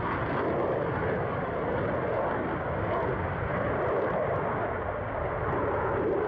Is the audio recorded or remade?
recorded